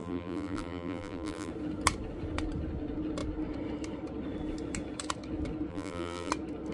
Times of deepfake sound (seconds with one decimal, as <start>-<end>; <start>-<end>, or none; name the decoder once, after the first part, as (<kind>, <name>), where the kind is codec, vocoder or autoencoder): 0.0-1.5 (vocoder, BigVGAN v2); 5.7-6.3